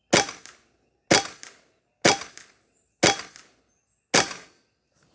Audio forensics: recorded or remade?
recorded